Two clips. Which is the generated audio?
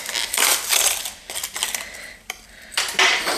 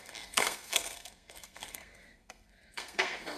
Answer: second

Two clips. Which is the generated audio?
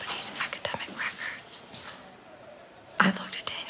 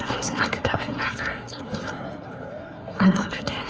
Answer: second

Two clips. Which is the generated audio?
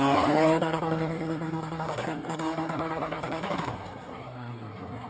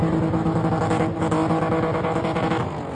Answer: first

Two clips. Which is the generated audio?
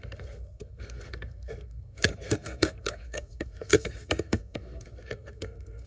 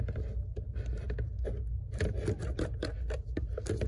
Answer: first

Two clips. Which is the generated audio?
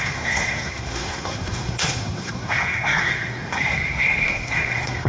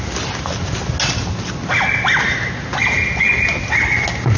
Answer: first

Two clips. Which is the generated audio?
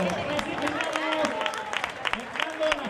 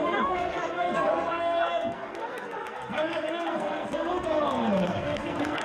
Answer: second